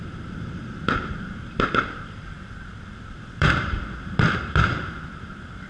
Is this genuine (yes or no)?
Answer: no